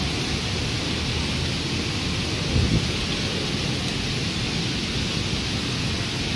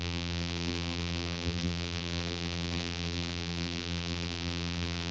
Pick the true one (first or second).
first